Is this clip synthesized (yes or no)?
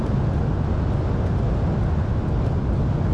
no